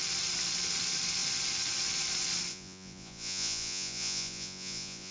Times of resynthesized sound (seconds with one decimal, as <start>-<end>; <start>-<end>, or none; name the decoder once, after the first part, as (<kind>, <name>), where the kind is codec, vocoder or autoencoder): 2.5-5.1 (vocoder, Vocos)